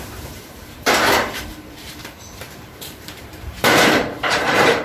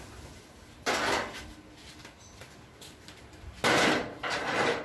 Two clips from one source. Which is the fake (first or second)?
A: first